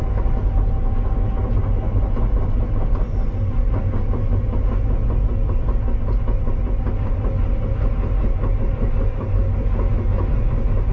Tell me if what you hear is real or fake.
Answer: real